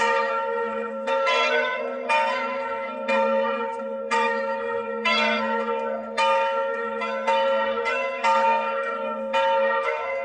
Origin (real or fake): fake